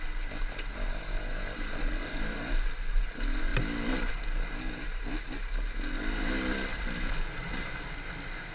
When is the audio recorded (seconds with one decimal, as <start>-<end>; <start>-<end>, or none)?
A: 0.0-6.7; 7.5-8.5